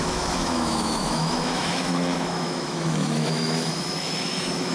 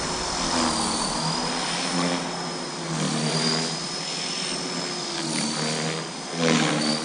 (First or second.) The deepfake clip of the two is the first